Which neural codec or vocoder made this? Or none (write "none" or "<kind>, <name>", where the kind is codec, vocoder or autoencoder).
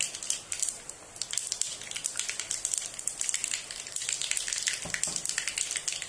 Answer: none